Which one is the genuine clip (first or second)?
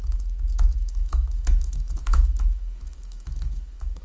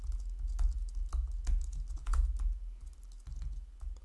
second